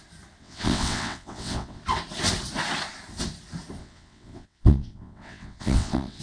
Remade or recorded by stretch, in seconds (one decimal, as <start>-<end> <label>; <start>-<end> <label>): 0.0-0.4 recorded; 0.4-1.8 remade; 1.8-3.8 recorded; 3.8-6.2 remade